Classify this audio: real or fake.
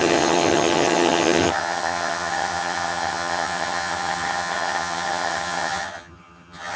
fake